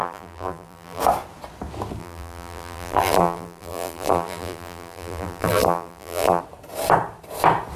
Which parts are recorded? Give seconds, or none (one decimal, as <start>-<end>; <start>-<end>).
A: 1.0-2.0; 6.4-7.8